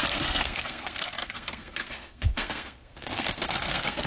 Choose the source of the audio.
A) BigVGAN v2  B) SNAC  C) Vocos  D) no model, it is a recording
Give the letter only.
B